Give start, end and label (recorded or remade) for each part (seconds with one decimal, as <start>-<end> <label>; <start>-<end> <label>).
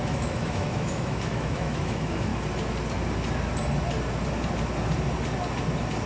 0.0-2.3 remade; 2.3-6.1 recorded